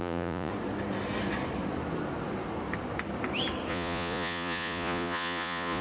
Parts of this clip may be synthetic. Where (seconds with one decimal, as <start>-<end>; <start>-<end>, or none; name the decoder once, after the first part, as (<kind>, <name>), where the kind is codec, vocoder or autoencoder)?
0.0-0.5 (vocoder, Vocos); 3.7-5.8